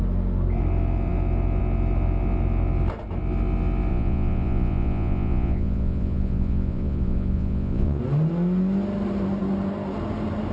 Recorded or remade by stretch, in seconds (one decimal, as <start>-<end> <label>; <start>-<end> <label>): 0.0-3.9 recorded; 3.9-8.0 remade; 8.0-10.5 recorded